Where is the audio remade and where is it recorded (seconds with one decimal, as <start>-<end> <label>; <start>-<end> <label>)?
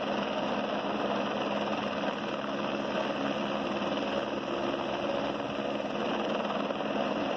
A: 0.0-7.4 recorded